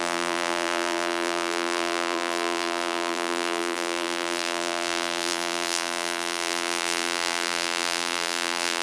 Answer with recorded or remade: remade